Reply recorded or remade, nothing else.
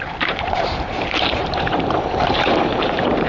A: remade